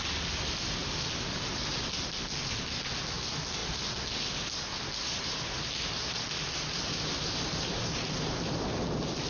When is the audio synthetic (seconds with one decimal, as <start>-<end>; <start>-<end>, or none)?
0.8-2.0; 5.0-8.8